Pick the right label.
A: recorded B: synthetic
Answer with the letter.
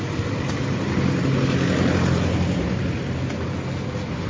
A